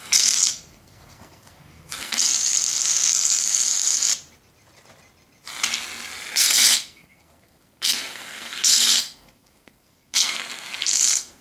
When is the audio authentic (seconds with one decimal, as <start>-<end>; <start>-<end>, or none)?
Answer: 4.1-6.3